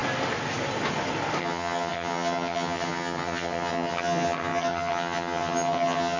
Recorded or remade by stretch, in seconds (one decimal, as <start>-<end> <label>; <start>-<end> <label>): 0.0-1.4 recorded; 1.4-6.2 remade